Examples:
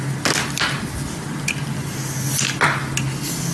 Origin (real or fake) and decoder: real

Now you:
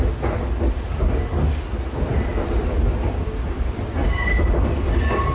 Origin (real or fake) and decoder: real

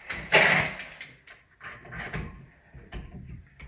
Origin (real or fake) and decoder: real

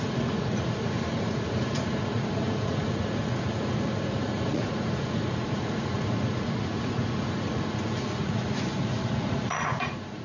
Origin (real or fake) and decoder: fake, vocoder, Vocos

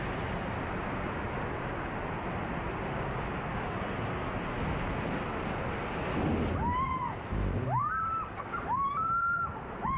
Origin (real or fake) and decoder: real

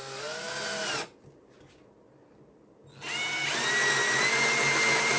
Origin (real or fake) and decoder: real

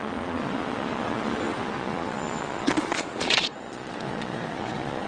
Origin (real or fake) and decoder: fake, vocoder, Vocos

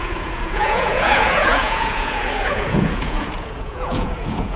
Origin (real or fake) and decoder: fake, vocoder, Vocos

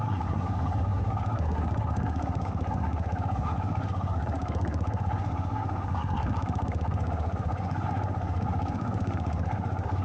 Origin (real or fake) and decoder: fake, codec, SNAC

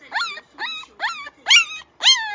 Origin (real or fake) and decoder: real